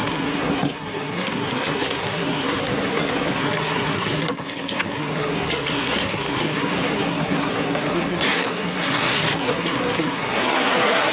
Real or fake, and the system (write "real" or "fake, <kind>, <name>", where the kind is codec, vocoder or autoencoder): fake, codec, SNAC